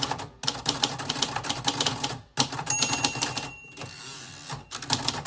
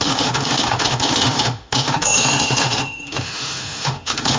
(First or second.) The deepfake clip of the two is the second